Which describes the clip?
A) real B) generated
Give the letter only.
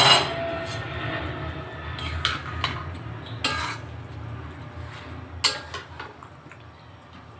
A